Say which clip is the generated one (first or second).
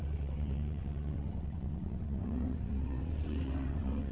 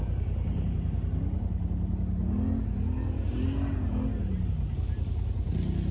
first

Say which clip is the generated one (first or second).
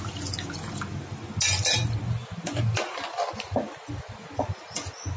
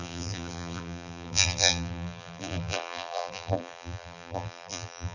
second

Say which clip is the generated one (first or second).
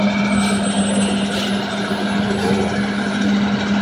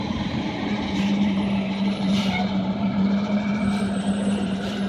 second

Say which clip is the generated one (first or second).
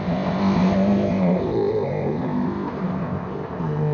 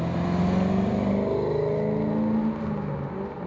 first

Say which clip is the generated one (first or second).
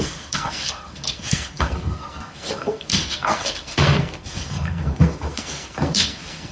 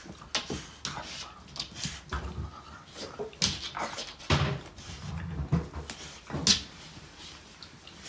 first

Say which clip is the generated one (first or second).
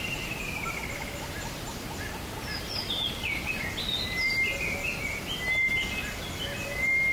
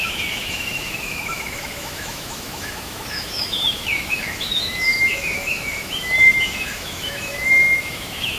second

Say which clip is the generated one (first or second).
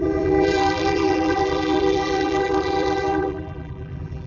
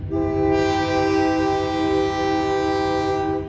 first